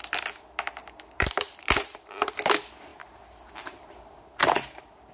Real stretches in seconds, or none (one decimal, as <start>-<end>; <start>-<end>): 0.0-0.8; 2.3-2.9; 4.2-5.1

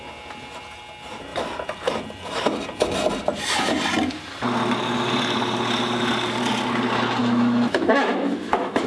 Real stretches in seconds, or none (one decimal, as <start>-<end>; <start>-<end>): 0.0-7.2